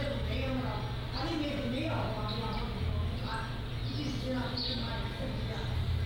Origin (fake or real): real